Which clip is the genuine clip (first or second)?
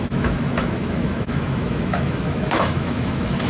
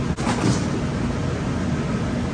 second